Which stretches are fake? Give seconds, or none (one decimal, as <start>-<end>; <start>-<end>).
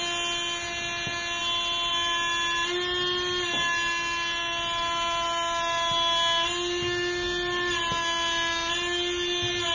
none